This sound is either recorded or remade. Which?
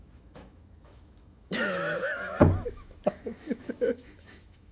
remade